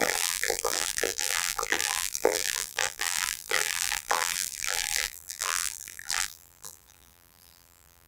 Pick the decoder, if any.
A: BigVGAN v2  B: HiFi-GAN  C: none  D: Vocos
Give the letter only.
A